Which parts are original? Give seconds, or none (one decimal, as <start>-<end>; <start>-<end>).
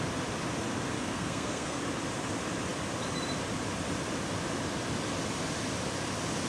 0.0-1.0; 1.8-6.5